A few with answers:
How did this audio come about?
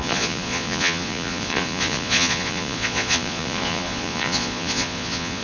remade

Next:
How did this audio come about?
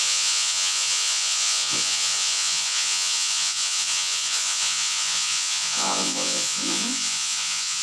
remade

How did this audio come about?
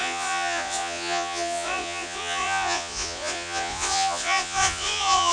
remade